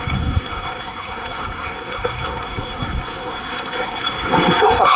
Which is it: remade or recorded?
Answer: remade